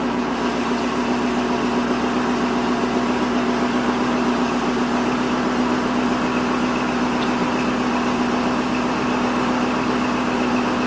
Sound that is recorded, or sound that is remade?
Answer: recorded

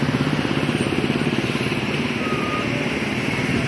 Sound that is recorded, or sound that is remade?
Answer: recorded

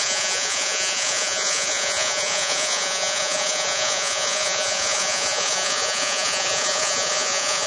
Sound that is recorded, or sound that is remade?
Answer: remade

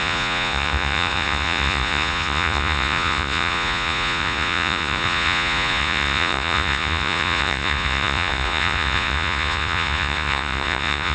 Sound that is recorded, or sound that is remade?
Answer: remade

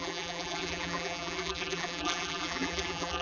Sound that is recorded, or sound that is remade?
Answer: remade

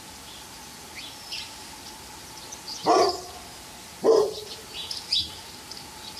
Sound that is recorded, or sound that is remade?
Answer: remade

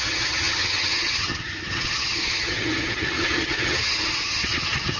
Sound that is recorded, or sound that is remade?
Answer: remade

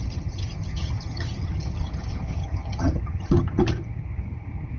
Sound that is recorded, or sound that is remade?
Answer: remade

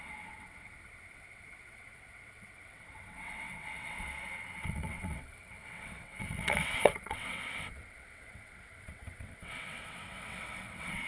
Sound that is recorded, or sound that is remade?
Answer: remade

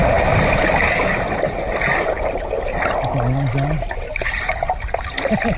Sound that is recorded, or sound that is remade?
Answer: recorded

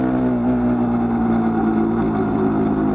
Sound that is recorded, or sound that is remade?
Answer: recorded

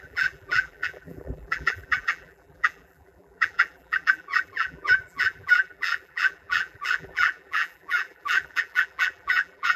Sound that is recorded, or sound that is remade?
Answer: remade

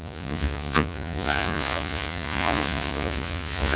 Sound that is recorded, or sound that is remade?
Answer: remade